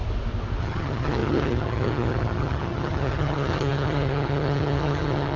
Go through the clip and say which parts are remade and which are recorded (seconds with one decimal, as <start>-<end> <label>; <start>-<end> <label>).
0.0-0.6 recorded; 0.6-5.4 remade